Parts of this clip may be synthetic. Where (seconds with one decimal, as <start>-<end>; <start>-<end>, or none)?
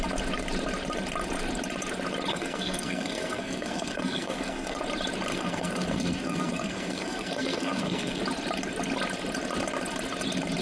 2.3-4.8; 5.3-8.2